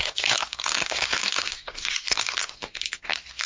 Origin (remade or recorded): remade